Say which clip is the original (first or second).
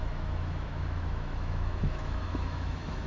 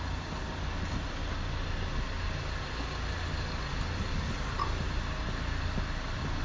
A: second